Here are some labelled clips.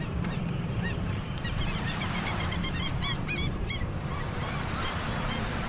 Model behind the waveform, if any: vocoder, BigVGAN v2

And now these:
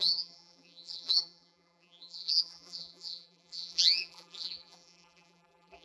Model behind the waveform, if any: vocoder, BigVGAN v2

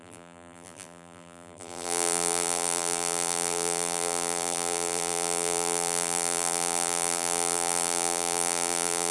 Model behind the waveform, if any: vocoder, BigVGAN v2